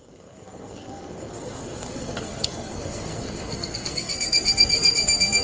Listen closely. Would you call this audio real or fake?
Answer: fake